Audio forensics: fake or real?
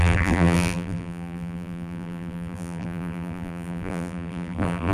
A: fake